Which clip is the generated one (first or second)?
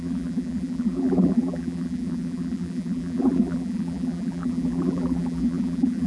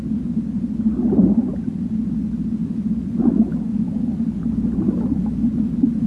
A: first